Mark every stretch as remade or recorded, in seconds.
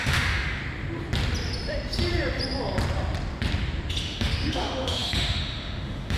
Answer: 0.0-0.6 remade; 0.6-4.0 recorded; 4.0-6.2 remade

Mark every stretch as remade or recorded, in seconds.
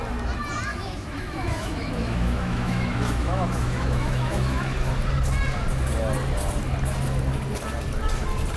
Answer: 0.0-0.7 recorded; 0.7-4.9 remade; 4.9-8.6 recorded